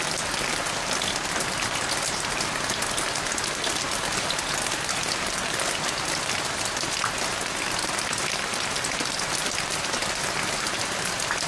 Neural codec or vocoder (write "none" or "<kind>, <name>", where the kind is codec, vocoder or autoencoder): none